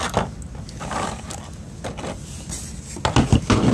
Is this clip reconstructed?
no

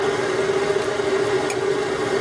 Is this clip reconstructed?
no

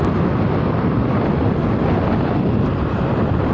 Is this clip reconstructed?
no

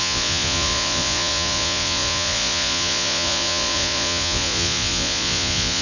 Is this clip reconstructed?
yes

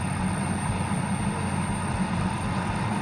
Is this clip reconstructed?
no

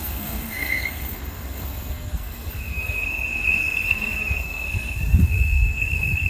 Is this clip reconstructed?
yes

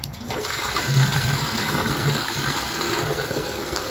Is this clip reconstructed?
yes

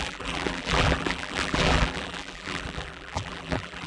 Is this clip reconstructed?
yes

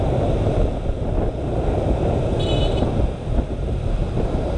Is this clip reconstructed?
no